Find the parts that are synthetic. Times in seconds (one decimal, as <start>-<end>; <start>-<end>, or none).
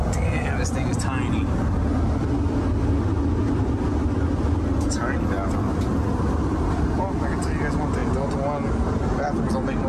none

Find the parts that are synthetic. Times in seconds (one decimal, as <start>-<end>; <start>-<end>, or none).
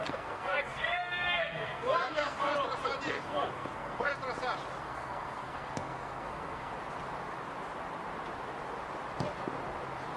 0.0-2.5; 3.1-4.1; 4.8-6.7